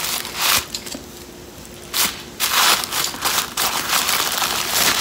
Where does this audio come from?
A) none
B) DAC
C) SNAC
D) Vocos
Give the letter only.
A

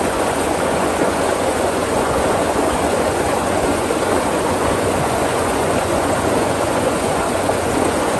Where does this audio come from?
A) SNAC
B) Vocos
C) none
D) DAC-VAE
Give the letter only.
B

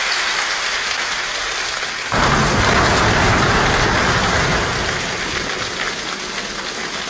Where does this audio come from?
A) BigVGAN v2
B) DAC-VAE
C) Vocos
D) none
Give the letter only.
D